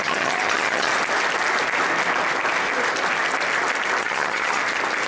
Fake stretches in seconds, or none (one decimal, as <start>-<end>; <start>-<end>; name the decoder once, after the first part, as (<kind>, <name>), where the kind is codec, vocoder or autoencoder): 0.0-0.9 (vocoder, HiFi-GAN); 4.0-4.6